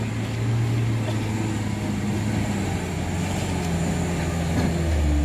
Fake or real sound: real